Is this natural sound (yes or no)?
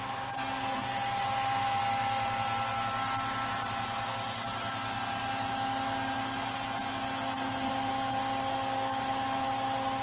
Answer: yes